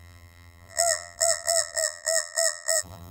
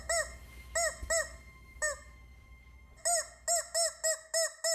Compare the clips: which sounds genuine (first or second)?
second